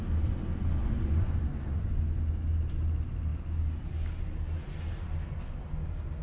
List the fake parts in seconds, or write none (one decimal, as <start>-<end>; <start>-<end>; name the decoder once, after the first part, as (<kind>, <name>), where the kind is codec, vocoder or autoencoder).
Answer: 0.8-1.9 (vocoder, Vocos)